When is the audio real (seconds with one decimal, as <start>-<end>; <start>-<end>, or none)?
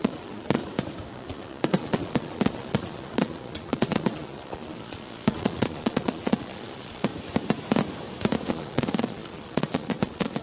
0.6-1.1; 7.1-8.5